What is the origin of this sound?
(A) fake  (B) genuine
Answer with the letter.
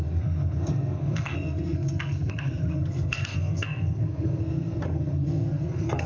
A